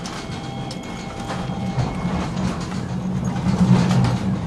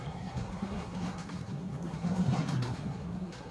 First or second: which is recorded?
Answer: first